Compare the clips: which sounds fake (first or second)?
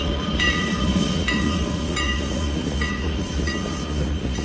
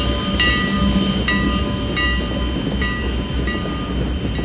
first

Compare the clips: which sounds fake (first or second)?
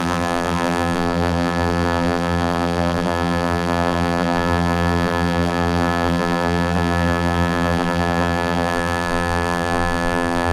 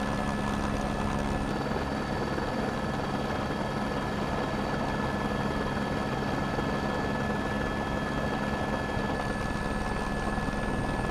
first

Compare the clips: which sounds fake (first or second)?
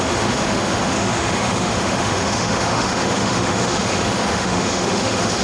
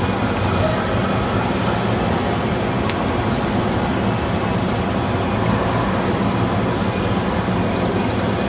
first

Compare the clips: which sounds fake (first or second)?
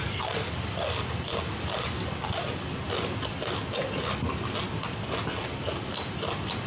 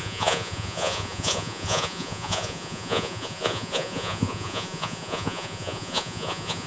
second